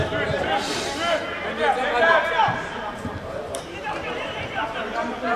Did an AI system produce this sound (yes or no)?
yes